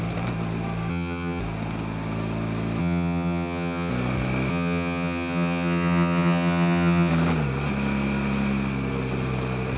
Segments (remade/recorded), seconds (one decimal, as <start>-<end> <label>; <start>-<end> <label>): 0.0-0.9 recorded; 0.9-1.4 remade; 1.4-2.8 recorded; 2.8-3.9 remade; 3.9-4.5 recorded; 4.5-7.1 remade; 7.1-9.8 recorded